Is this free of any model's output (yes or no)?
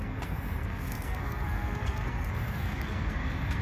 no